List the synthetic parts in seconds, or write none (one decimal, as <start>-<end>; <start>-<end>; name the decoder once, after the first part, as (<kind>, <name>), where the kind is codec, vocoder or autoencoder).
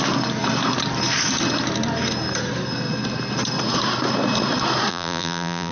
4.9-5.7 (vocoder, BigVGAN v2)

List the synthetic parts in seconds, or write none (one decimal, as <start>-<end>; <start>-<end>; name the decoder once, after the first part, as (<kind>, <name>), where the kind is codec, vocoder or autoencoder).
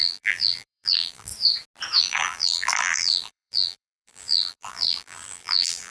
0.0-1.3 (vocoder, BigVGAN v2); 2.0-5.9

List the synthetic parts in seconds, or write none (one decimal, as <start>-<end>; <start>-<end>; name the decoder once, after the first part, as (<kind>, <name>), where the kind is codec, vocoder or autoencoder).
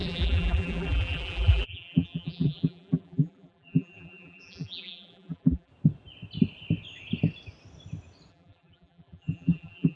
0.0-5.7 (vocoder, BigVGAN v2); 8.3-10.0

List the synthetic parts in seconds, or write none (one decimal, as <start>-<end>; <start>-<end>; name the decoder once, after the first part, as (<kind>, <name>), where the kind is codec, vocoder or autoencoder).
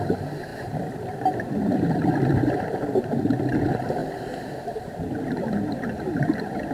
0.5-3.2 (vocoder, BigVGAN v2)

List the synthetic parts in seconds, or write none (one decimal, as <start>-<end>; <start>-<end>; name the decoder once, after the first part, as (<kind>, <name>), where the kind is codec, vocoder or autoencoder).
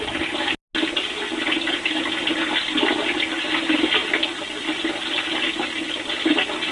none